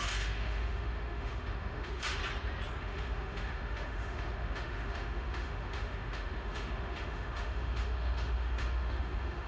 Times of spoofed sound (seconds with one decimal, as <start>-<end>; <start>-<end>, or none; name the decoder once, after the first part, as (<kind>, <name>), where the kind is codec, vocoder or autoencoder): 0.0-2.2 (autoencoder, DAC-VAE); 2.8-9.5

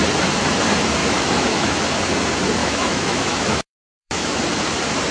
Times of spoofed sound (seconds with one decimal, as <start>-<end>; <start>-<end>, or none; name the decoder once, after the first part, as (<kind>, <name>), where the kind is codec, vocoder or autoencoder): 1.0-1.7 (autoencoder, DAC-VAE); 2.6-4.4